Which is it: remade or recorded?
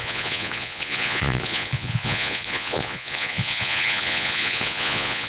remade